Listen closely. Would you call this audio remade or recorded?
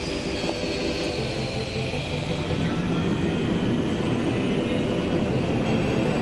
recorded